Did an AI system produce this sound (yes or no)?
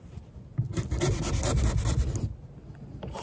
no